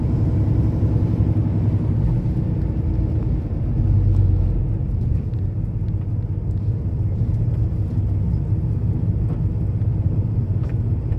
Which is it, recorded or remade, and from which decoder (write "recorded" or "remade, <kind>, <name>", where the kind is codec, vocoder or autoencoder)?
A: recorded